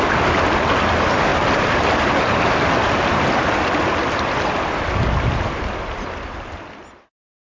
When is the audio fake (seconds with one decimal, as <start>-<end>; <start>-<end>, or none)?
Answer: none

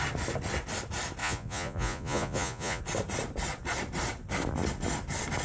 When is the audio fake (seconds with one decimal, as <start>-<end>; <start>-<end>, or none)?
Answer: 1.2-2.8

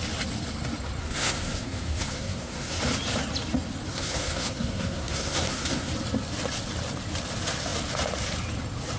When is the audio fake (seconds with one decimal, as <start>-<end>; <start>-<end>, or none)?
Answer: 1.0-2.8; 3.9-5.9